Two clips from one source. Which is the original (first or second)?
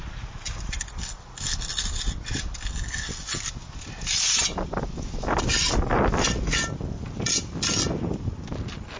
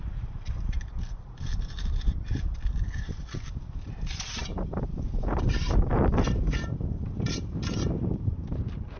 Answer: first